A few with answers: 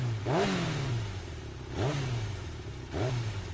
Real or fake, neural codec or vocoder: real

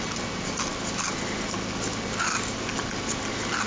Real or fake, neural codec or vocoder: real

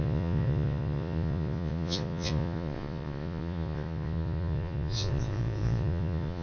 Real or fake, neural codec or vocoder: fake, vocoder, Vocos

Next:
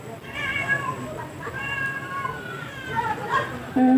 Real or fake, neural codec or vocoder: real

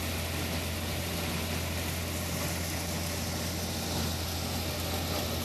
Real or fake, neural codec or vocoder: real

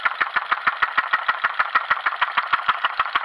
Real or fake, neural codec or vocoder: real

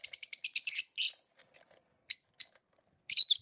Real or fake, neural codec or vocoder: real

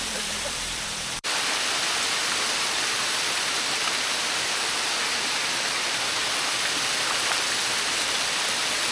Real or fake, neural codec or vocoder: fake, vocoder, BigVGAN v2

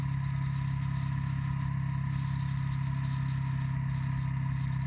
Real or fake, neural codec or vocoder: real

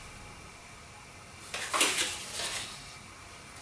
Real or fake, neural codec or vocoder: real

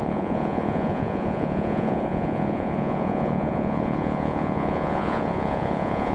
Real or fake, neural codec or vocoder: fake, vocoder, Vocos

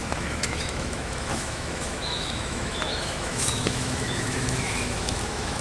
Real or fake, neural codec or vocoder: fake, autoencoder, DAC-VAE